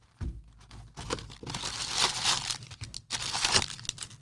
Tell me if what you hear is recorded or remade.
recorded